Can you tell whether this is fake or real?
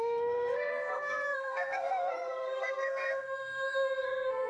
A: fake